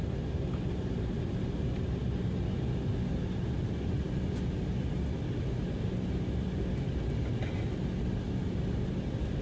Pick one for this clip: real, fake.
real